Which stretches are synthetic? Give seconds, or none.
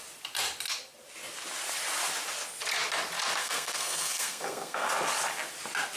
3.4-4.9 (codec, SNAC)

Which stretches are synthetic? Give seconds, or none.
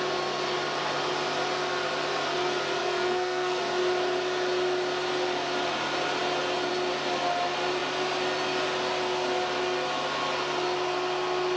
2.8-3.6 (codec, SNAC)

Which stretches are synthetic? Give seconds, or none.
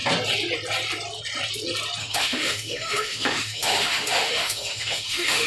2.0-5.5 (autoencoder, DAC-VAE)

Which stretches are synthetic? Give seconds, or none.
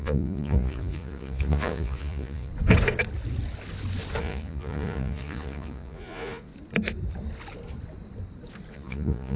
0.0-2.5 (vocoder, Vocos); 4.2-6.5; 8.7-9.4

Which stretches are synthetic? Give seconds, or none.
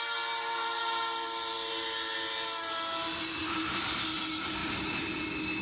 3.4-4.0 (vocoder, BigVGAN v2)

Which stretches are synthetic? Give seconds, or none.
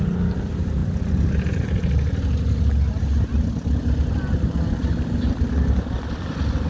none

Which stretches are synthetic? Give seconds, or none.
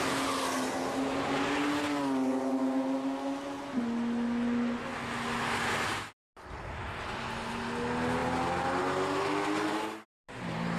none